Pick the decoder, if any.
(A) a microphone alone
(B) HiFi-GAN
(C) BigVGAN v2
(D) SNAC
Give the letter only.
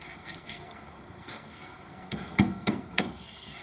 D